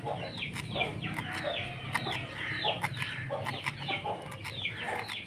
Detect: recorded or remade recorded